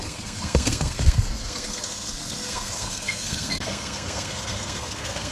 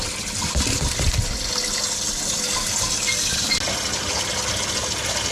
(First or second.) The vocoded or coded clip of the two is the first